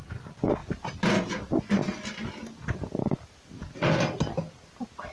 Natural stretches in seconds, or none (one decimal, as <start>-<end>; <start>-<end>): 0.0-5.1